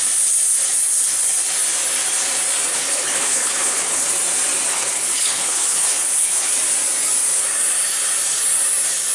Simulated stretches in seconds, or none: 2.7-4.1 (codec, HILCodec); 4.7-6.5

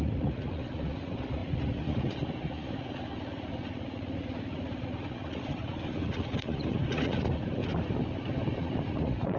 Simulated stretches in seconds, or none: 0.0-7.6 (vocoder, Vocos); 8.6-9.4

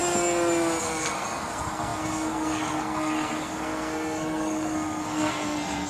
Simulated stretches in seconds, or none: 0.8-5.9 (codec, SNAC)

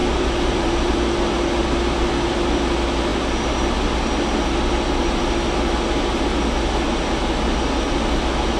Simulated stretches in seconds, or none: 0.0-0.9 (vocoder, BigVGAN v2)

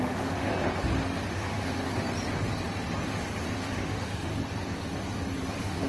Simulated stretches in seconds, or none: 0.0-0.5 (autoencoder, DAC-VAE); 1.3-1.9; 3.6-4.3; 5.5-5.9

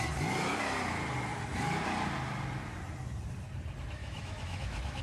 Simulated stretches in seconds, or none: 4.0-5.0 (autoencoder, DAC-VAE)